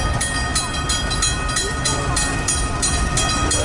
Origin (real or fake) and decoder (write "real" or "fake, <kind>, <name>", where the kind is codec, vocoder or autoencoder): real